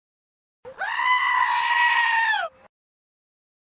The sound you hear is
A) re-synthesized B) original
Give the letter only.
B